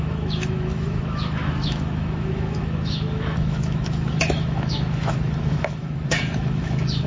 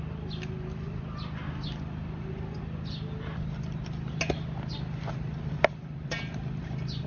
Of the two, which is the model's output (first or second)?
first